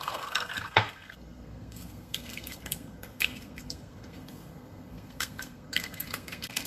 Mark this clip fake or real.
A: fake